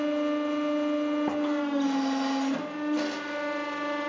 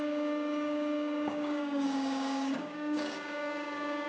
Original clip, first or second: first